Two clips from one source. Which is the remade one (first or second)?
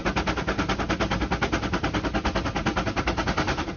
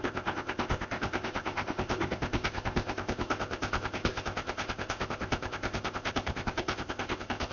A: second